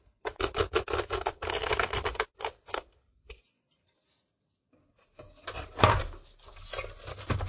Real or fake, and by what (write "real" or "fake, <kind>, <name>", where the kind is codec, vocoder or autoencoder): real